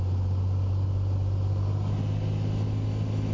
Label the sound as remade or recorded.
recorded